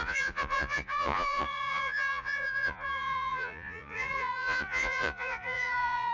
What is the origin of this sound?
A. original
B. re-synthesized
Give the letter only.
B